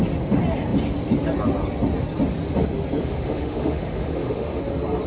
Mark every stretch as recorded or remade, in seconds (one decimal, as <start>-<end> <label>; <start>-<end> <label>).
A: 0.0-3.0 recorded; 3.0-4.6 remade; 4.6-5.1 recorded

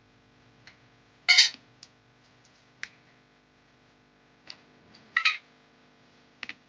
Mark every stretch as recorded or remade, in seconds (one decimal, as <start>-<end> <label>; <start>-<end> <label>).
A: 0.0-6.7 recorded

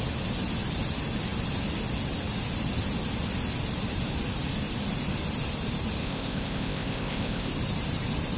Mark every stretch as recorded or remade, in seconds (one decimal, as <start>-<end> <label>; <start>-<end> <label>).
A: 0.0-6.0 recorded; 6.0-7.5 remade; 7.5-8.4 recorded

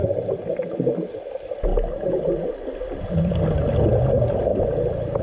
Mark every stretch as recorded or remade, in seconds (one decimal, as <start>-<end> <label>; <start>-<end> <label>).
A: 0.0-5.2 recorded

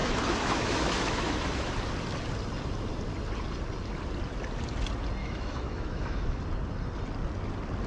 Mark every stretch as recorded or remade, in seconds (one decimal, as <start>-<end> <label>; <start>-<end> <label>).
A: 0.0-1.7 remade; 1.7-5.2 recorded; 5.2-6.4 remade; 6.4-7.9 recorded

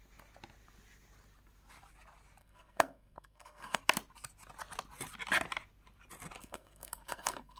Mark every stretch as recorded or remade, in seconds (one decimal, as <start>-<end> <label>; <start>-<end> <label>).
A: 0.0-2.4 recorded; 2.4-3.8 remade; 3.8-6.4 recorded; 6.4-7.6 remade